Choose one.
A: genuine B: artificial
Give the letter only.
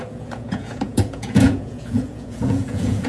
B